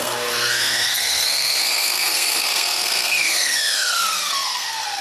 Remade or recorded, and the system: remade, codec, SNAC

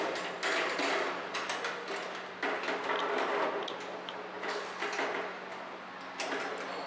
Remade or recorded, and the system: recorded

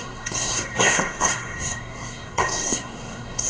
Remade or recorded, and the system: remade, codec, SNAC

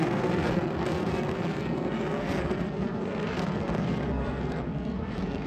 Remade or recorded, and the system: remade, codec, SNAC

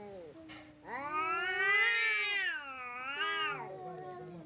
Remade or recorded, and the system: recorded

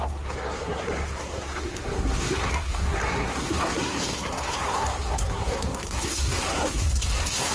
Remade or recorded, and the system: remade, codec, SNAC